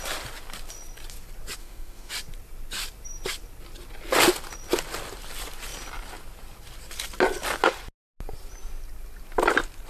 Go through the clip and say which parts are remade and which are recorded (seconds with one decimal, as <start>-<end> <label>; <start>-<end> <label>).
0.0-1.6 recorded; 1.6-2.1 remade; 2.1-9.9 recorded